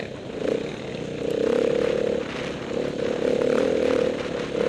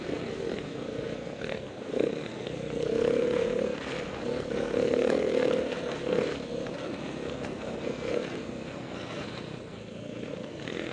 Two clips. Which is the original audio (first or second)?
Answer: first